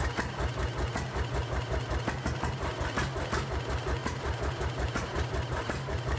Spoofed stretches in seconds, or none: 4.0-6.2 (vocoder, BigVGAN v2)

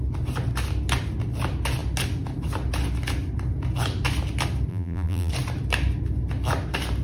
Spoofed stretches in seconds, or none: 4.7-5.3 (vocoder, BigVGAN v2)

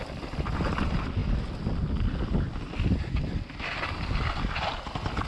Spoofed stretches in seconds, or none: none

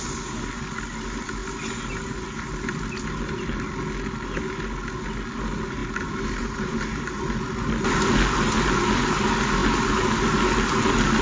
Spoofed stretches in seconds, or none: 5.8-7.2 (vocoder, BigVGAN v2)

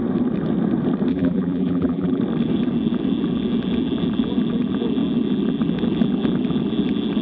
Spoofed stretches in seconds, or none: 1.1-2.2 (vocoder, BigVGAN v2)

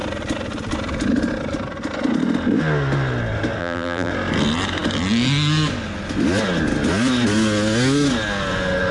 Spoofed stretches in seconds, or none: 3.6-4.1 (vocoder, BigVGAN v2)

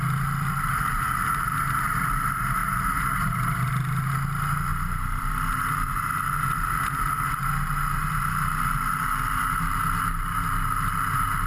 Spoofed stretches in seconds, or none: 4.7-5.5 (vocoder, BigVGAN v2)